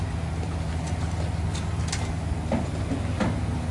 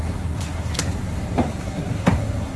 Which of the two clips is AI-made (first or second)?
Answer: second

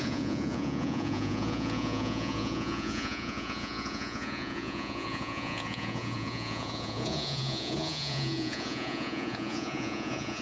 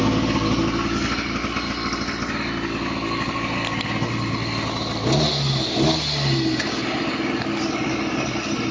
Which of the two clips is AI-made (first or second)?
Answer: first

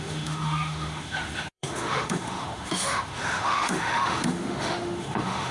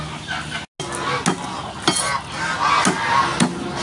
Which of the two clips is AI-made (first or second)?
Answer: first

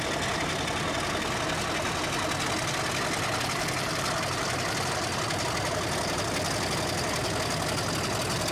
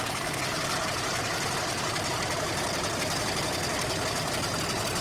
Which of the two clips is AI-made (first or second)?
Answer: second